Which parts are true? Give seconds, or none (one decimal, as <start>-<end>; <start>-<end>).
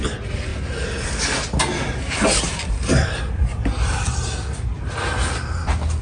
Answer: 0.5-2.5